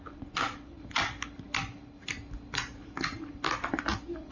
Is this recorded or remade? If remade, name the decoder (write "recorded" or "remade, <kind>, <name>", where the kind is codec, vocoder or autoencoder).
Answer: recorded